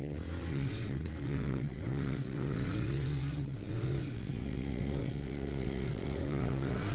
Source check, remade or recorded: remade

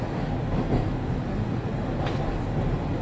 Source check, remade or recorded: recorded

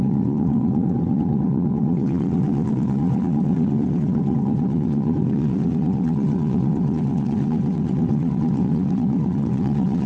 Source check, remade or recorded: remade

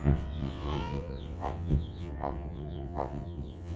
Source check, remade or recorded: remade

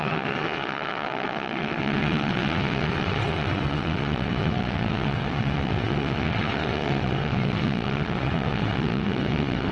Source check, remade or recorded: remade